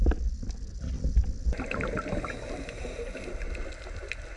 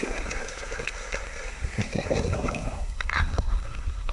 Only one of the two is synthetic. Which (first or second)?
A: second